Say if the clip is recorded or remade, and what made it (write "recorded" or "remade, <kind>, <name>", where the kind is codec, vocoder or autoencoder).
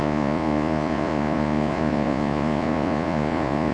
remade, vocoder, Vocos